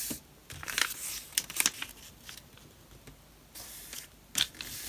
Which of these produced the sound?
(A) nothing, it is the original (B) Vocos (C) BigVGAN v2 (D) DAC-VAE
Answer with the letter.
A